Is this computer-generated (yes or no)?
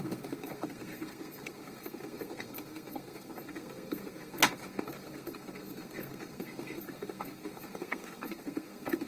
yes